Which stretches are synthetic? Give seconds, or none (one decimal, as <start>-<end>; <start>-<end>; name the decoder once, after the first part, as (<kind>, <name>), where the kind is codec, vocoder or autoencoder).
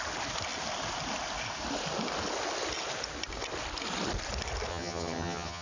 4.7-5.6 (vocoder, HiFi-GAN)